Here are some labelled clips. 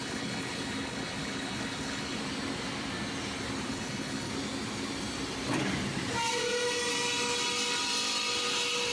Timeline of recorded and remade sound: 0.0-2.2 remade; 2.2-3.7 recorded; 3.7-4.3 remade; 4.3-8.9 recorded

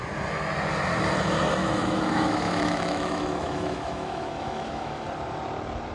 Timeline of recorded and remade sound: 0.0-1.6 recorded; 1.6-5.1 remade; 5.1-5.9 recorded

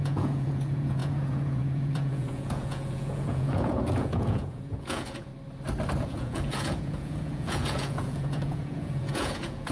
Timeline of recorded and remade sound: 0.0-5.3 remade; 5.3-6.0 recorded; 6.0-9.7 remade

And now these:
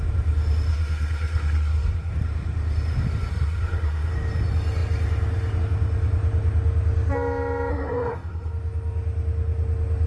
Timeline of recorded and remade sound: 0.0-0.7 recorded; 0.7-2.1 remade; 2.1-3.3 recorded; 3.3-4.1 remade; 4.1-7.7 recorded; 7.7-8.5 remade; 8.5-10.1 recorded

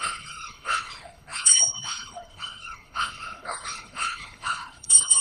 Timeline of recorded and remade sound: 0.0-5.2 remade

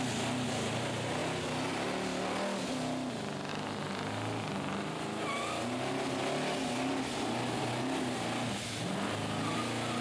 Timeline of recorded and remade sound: 0.0-10.0 recorded

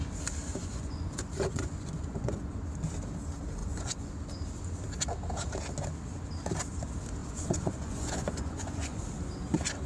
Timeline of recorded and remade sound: 0.0-0.6 recorded; 0.6-2.6 remade; 2.6-3.6 recorded; 3.6-4.1 remade; 4.1-7.2 recorded; 7.2-9.0 remade; 9.0-9.9 recorded